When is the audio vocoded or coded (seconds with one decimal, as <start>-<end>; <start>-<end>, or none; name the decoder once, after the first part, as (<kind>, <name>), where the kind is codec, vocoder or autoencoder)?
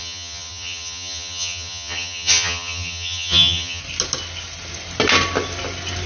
0.0-3.8 (vocoder, HiFi-GAN)